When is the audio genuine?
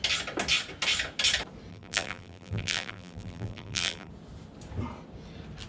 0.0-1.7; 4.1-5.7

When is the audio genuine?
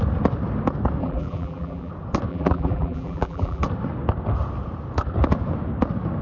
0.0-1.0; 1.9-2.3; 3.6-6.2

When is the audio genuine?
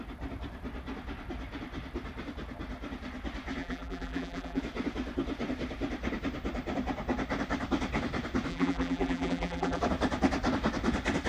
0.0-3.6; 4.6-8.5; 9.8-11.3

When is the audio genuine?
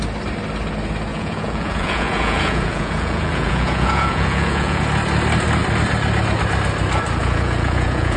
0.0-1.1; 4.8-7.2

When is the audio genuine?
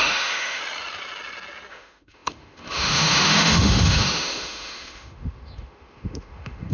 0.6-1.7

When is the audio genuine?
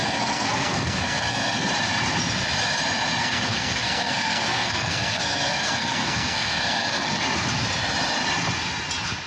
1.7-3.2; 7.2-9.3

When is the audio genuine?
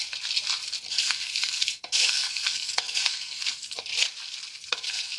0.0-0.9; 3.9-4.7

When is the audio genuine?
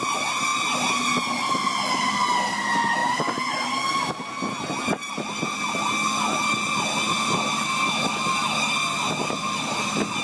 0.0-10.2